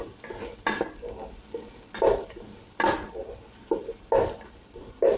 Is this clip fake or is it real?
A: real